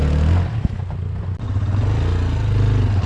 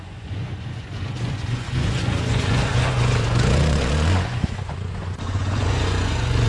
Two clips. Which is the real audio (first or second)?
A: first